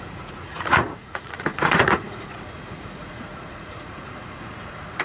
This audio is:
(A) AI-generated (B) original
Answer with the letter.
A